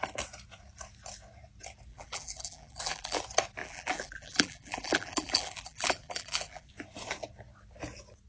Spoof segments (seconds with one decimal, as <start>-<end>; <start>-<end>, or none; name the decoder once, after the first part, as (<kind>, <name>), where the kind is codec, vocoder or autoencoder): 1.9-3.2 (vocoder, BigVGAN v2); 3.6-6.7